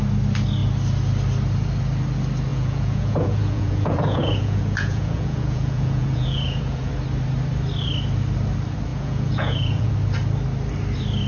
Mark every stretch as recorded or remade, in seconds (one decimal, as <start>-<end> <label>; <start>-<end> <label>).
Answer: 0.0-2.5 recorded; 2.5-6.9 remade; 6.9-8.9 recorded; 8.9-9.9 remade; 9.9-11.3 recorded